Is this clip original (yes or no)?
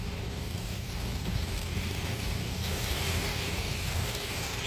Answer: no